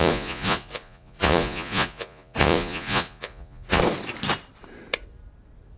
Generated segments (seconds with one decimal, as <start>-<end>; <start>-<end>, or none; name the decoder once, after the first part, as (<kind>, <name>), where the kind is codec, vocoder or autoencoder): 0.0-3.8 (vocoder, Vocos)

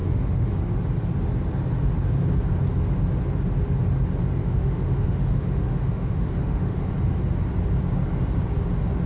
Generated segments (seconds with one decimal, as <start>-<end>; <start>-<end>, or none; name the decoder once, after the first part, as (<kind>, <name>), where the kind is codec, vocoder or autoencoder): 0.0-0.5 (autoencoder, DAC-VAE); 4.4-6.9